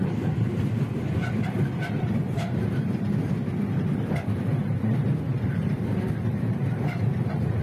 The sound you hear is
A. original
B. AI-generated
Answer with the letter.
B